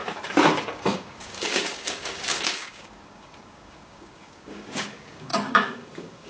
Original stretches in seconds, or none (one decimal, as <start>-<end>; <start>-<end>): none